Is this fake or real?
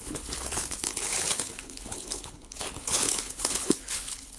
fake